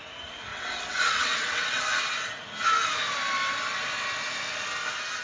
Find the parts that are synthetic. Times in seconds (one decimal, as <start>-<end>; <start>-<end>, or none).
0.5-1.8

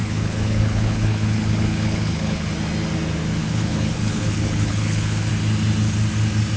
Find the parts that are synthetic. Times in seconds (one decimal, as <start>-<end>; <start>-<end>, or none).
0.0-2.5; 3.4-5.3

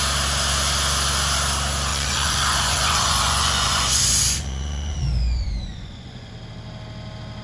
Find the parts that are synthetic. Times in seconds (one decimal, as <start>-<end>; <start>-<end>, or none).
1.9-6.3

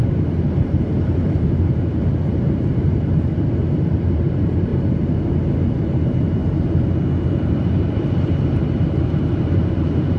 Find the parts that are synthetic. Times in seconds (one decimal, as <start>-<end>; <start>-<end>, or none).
0.0-4.7; 5.8-6.4; 7.5-10.2

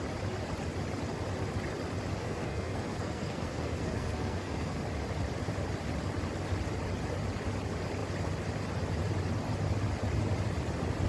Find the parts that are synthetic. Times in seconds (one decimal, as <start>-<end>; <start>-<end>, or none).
2.2-4.8

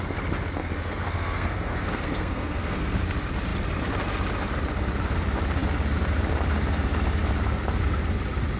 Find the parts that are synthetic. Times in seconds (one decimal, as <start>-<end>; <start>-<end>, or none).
0.6-3.0